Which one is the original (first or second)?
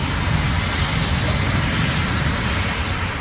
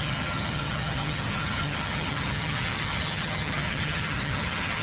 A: first